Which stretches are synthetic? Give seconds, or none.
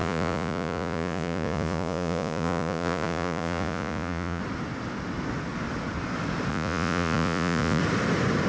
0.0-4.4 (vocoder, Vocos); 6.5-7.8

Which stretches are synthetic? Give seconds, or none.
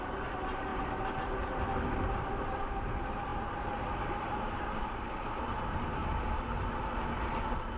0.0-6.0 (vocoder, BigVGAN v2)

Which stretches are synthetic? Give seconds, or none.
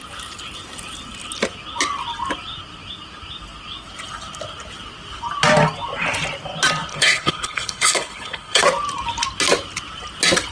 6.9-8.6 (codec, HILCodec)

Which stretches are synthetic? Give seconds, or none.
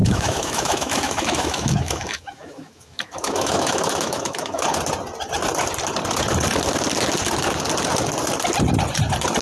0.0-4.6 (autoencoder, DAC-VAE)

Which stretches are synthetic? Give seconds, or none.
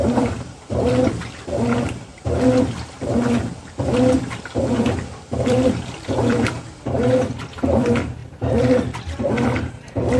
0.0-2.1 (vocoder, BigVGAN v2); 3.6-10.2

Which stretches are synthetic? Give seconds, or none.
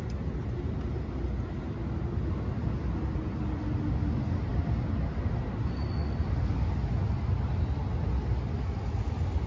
none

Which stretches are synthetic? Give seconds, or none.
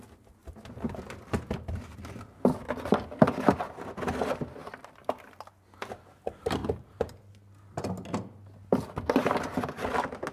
4.6-5.5 (vocoder, BigVGAN v2)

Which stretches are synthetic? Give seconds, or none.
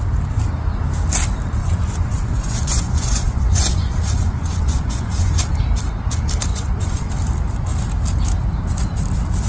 1.6-5.4 (vocoder, Vocos); 6.5-7.1